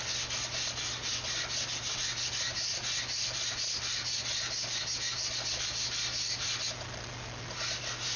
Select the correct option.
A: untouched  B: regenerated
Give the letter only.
A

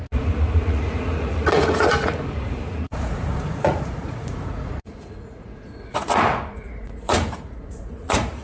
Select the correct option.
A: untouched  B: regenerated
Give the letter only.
B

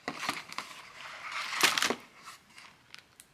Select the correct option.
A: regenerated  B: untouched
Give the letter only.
B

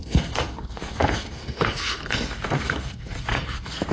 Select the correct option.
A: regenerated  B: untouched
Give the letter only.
A